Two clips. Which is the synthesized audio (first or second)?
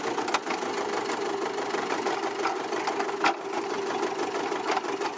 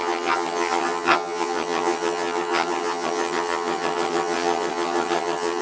second